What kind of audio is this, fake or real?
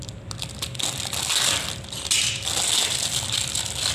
real